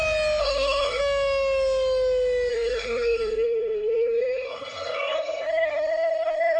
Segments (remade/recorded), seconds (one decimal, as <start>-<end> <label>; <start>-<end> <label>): 0.0-0.4 recorded; 0.4-1.0 remade; 1.0-2.5 recorded; 2.5-6.6 remade